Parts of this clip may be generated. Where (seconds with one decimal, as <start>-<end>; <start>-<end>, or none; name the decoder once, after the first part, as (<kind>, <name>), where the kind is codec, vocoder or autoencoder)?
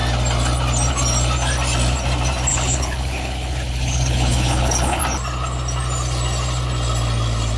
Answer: 2.5-5.0 (codec, HILCodec)